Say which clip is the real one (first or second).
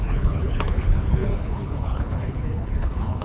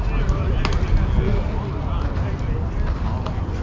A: second